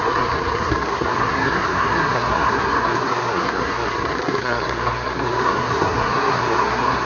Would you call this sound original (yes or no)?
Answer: no